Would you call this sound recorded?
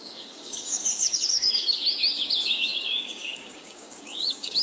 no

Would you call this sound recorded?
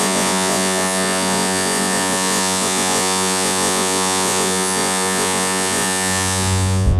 no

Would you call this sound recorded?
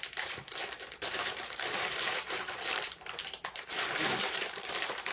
no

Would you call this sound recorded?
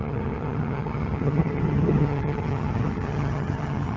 no